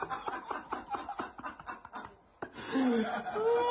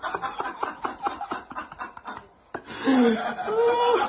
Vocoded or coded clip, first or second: second